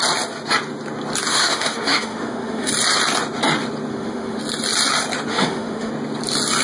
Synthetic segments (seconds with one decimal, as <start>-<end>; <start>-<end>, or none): 1.3-2.7; 3.9-4.4; 5.3-5.9